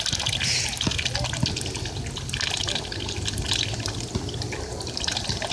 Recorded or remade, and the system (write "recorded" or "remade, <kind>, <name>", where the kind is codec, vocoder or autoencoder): recorded